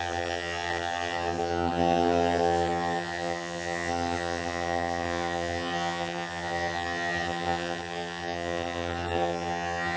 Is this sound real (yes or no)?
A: no